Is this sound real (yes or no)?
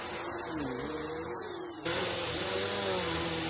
yes